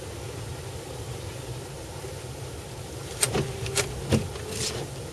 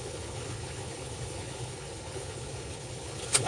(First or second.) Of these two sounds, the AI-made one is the second